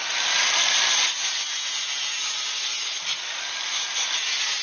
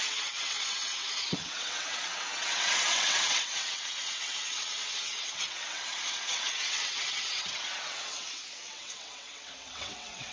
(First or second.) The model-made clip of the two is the second